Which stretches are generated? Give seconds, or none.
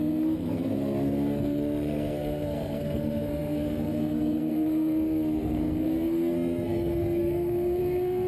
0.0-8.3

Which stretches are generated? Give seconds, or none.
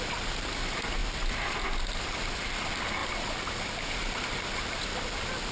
none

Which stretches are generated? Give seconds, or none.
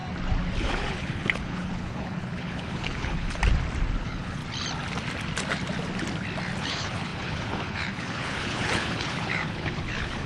0.6-3.4; 4.0-4.4; 6.6-10.3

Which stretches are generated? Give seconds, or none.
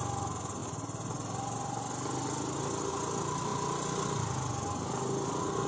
none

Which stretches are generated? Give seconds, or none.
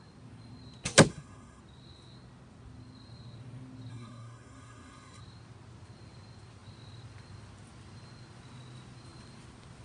1.1-1.6; 3.9-5.2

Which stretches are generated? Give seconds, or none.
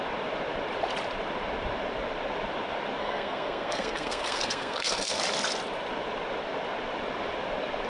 3.0-5.2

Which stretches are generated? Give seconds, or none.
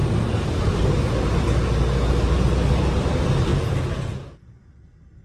3.5-4.7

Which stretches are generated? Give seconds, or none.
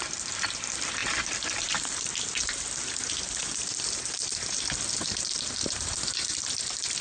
none